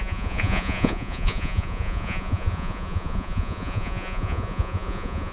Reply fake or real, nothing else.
fake